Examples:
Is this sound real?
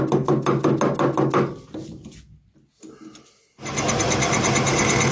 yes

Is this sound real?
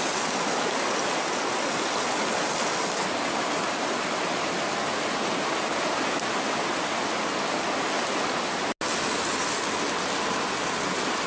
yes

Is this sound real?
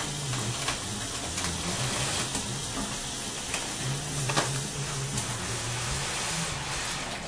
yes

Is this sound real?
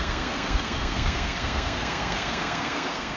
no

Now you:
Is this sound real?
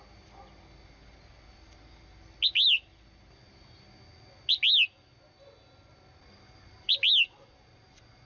yes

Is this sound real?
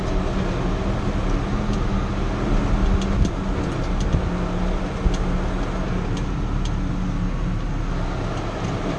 yes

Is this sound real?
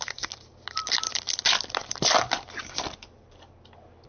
yes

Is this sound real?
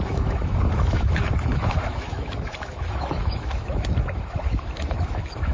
no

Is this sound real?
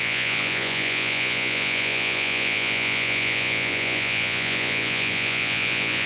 no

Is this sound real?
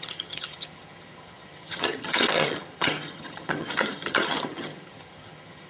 no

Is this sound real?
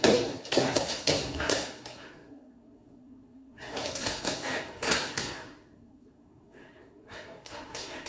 no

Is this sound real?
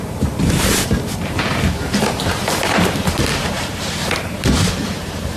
no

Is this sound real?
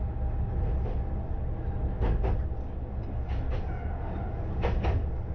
yes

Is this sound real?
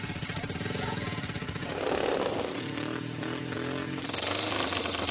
yes